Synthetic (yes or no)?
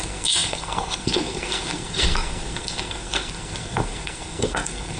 yes